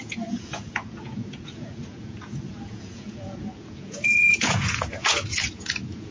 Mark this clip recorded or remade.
remade